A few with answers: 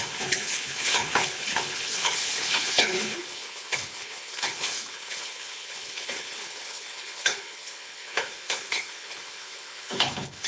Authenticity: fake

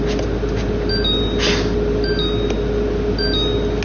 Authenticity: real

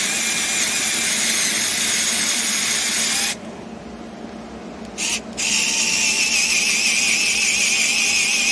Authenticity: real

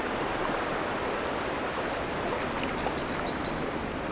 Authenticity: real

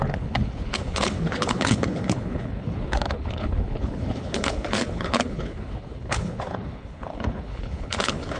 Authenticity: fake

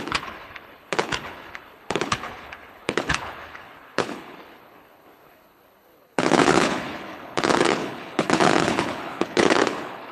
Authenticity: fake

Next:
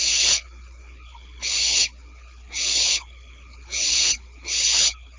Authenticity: fake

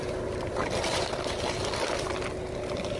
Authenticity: real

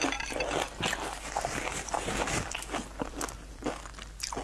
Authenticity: real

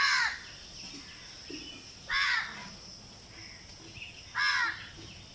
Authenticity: real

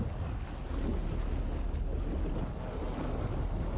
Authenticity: real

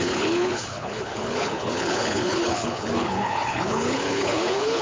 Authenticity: fake